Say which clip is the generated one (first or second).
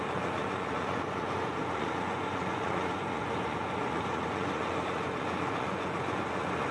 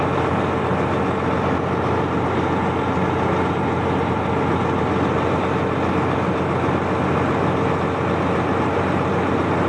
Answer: first